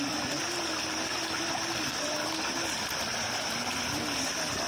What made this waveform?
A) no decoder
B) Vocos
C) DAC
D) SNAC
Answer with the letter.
A